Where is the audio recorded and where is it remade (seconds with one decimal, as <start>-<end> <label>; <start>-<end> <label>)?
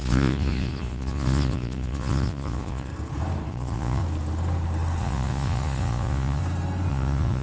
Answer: 0.0-2.9 remade; 2.9-3.5 recorded; 3.5-4.0 remade; 4.0-5.0 recorded; 5.0-6.4 remade; 6.4-6.9 recorded; 6.9-7.4 remade